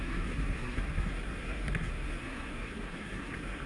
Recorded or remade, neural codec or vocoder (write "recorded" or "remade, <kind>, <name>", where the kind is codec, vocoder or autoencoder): remade, codec, SNAC